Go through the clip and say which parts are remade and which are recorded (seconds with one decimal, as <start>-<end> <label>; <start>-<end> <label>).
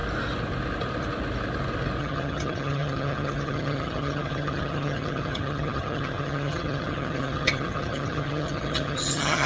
0.0-2.0 recorded; 2.0-9.5 remade